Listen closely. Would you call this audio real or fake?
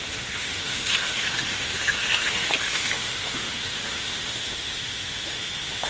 fake